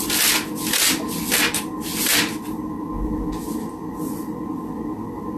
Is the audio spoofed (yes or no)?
no